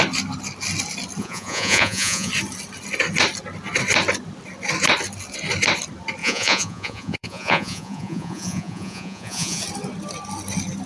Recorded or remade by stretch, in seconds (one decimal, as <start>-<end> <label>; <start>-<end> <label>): 0.0-1.2 recorded; 1.2-2.3 remade; 2.3-6.2 recorded; 6.2-9.6 remade; 9.6-10.9 recorded